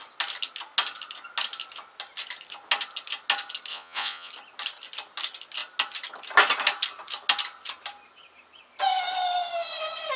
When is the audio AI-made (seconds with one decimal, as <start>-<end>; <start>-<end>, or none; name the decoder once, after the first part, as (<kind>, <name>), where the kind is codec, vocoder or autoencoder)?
3.7-4.3 (vocoder, Vocos)